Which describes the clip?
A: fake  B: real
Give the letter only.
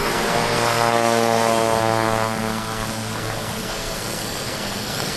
A